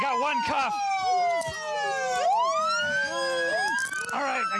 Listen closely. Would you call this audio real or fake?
real